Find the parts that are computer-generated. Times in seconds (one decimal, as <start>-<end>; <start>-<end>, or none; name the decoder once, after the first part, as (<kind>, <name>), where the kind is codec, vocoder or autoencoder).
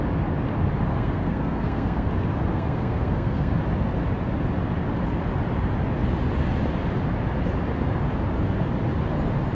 0.9-2.1 (codec, SNAC); 2.5-3.5